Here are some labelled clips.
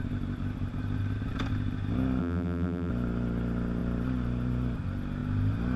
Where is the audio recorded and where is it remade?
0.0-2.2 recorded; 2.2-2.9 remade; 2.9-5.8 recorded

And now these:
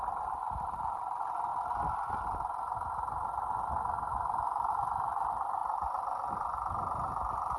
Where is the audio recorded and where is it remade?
0.0-7.6 recorded

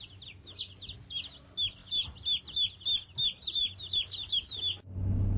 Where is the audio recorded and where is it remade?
0.0-3.6 recorded; 3.6-4.6 remade; 4.6-5.4 recorded

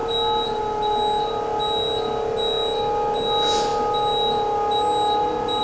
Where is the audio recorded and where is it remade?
0.0-5.6 recorded

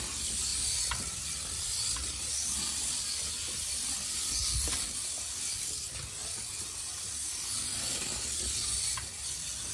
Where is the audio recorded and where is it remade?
0.0-0.5 recorded; 0.5-2.2 remade; 2.2-9.7 recorded